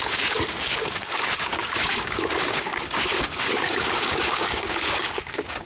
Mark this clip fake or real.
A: fake